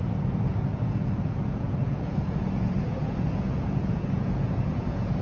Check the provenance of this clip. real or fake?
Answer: fake